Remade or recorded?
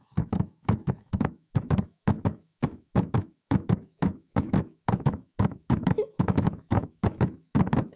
remade